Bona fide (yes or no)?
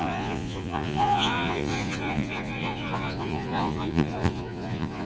no